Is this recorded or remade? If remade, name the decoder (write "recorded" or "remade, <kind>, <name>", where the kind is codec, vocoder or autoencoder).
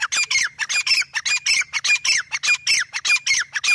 recorded